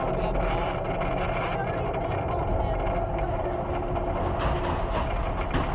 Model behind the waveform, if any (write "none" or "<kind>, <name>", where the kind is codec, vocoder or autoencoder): none